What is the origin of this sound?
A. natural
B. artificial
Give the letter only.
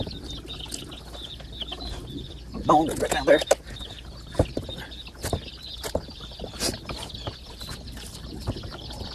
A